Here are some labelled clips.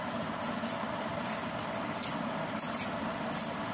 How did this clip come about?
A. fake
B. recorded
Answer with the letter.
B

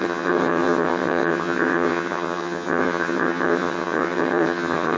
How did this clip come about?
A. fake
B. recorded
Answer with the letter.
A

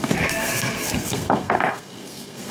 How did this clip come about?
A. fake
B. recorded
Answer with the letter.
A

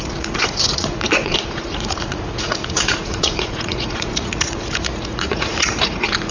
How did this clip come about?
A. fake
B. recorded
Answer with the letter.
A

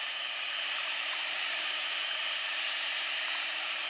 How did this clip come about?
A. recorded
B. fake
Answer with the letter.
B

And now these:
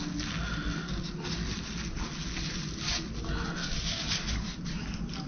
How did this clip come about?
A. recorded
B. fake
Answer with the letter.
A